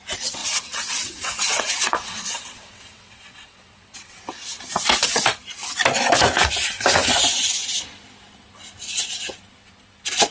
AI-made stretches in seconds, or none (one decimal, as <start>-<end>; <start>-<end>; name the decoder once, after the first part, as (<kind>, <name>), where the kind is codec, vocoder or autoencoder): 0.4-4.6 (vocoder, WaveNeXt)